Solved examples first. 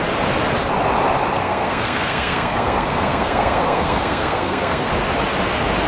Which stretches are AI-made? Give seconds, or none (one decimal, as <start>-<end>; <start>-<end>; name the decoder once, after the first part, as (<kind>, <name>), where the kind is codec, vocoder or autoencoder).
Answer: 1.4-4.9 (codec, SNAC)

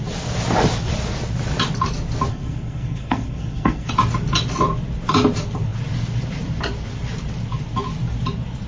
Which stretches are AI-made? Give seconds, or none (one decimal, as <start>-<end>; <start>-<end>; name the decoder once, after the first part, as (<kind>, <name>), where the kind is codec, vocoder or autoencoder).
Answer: 2.3-3.9 (codec, SNAC)

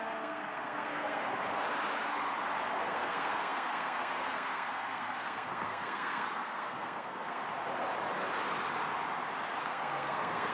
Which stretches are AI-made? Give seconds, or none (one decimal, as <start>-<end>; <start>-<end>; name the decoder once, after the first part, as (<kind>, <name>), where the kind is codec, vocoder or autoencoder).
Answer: 0.0-1.3 (codec, SNAC); 2.8-7.4; 9.6-10.5

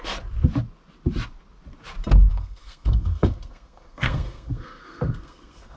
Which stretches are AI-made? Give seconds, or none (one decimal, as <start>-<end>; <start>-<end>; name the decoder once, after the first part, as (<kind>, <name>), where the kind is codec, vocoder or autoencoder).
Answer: 2.3-5.8 (codec, SNAC)

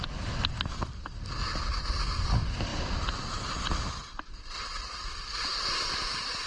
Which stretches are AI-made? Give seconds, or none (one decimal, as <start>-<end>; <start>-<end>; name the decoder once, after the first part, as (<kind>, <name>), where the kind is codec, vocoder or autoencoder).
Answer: none

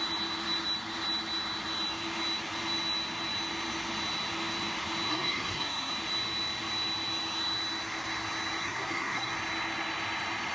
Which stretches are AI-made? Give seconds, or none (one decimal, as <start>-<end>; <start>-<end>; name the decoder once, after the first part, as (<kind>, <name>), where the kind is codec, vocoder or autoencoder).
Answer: 5.1-5.9 (codec, SNAC); 8.6-9.3